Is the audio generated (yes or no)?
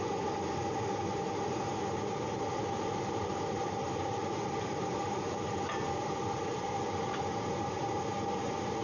yes